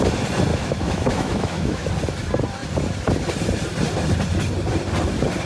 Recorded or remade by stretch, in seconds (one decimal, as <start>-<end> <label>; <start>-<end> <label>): 0.0-0.5 recorded; 0.5-1.9 remade; 1.9-5.5 recorded